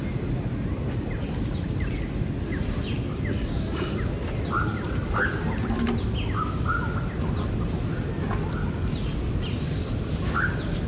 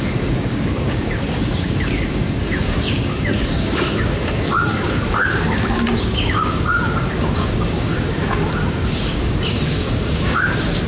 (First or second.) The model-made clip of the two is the second